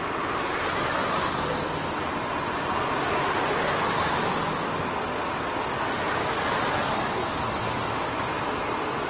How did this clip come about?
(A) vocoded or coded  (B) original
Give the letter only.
B